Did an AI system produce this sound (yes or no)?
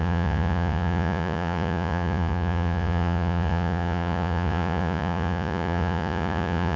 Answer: yes